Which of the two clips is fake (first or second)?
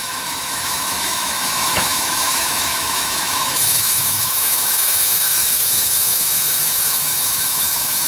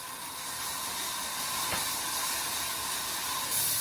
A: first